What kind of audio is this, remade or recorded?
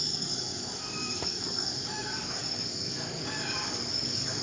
remade